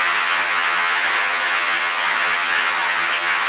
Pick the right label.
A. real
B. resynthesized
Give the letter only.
B